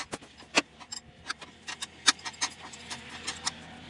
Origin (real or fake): real